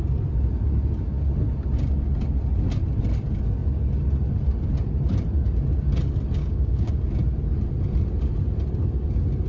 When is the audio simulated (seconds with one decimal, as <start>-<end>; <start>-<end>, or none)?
6.4-6.9